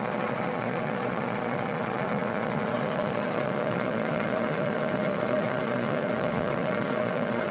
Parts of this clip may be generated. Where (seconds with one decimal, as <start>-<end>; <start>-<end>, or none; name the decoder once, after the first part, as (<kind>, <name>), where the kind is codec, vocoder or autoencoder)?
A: 0.0-7.5 (vocoder, Vocos)